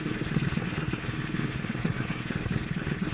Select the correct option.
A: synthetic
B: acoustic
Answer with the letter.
A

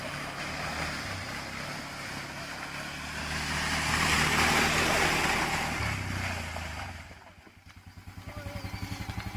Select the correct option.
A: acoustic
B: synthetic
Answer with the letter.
A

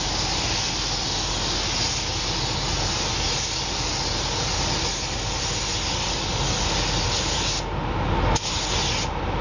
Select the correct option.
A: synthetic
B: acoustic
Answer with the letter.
B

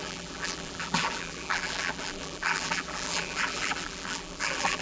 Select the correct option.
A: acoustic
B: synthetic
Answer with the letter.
B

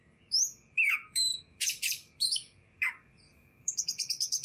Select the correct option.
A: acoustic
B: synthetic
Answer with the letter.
B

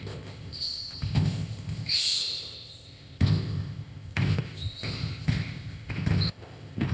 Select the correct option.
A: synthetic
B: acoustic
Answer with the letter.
A